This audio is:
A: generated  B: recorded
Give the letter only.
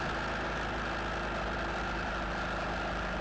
B